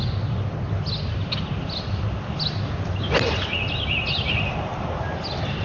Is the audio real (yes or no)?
yes